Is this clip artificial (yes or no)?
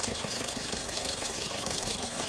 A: yes